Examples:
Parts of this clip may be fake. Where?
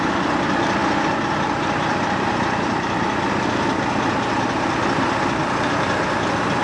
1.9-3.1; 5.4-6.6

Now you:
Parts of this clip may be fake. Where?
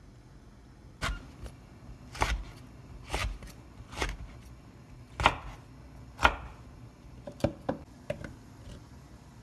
none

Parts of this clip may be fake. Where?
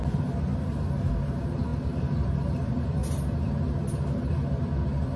none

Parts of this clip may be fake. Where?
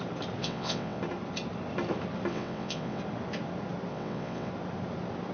0.4-1.0; 2.3-3.0; 3.9-4.5